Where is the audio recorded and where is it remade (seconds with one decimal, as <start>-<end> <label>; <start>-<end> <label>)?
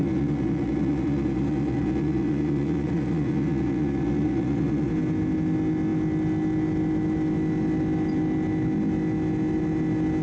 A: 0.0-4.9 remade; 4.9-10.2 recorded